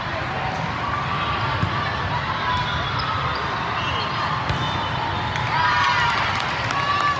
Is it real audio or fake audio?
real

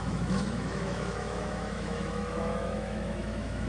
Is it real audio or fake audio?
fake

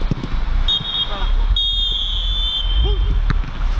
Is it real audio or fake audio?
real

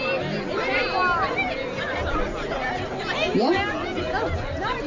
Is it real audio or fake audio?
real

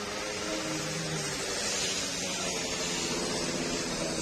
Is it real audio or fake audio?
real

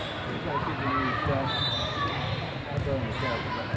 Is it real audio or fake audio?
real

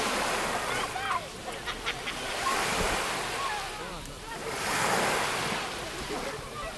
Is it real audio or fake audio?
real